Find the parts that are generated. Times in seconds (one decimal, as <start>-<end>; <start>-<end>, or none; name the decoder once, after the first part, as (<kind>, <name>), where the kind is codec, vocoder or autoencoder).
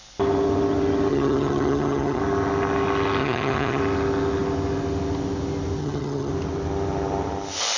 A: 1.1-2.2 (vocoder, HiFi-GAN); 3.2-3.8; 5.8-6.3